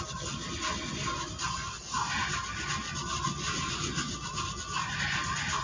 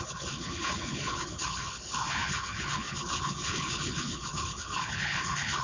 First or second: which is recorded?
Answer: first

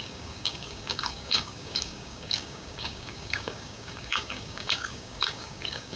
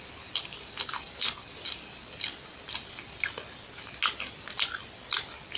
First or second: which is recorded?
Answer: second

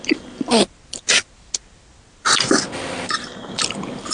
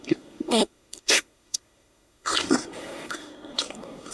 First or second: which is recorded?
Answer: first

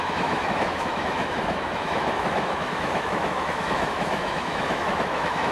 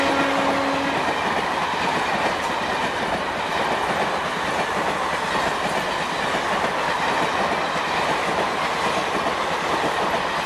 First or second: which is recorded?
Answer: second